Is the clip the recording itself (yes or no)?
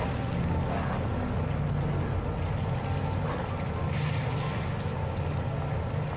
yes